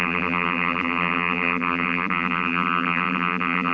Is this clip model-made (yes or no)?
yes